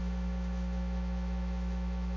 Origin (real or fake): fake